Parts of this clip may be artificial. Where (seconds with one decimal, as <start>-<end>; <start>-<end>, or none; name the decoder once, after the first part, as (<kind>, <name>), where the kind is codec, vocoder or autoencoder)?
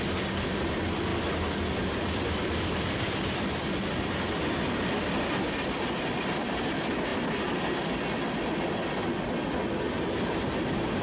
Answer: none